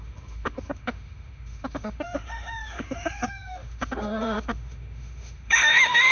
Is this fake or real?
fake